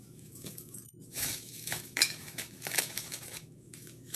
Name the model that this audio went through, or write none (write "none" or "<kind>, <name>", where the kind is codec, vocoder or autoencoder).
autoencoder, DAC-VAE